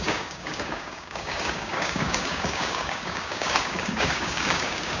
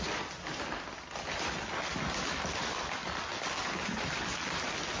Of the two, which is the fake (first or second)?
first